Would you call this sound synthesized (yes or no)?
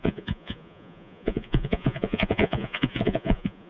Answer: yes